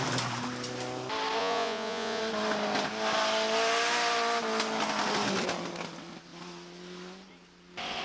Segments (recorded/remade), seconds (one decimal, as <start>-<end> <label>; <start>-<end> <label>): 0.0-1.4 recorded; 1.4-2.2 remade; 2.2-8.0 recorded